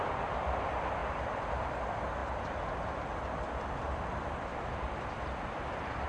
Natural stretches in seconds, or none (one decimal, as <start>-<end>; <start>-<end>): 1.0-1.6